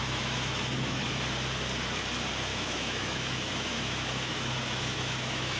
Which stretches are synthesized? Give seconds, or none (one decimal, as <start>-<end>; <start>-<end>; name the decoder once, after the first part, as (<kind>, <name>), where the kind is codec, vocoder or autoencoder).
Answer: 0.0-1.1 (autoencoder, DAC-VAE); 2.5-5.6